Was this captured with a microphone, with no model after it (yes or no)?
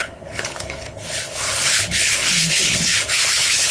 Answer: no